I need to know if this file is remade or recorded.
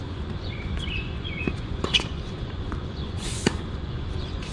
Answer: remade